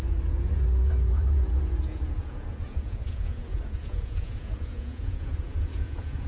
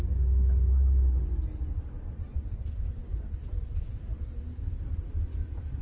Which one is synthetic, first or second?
first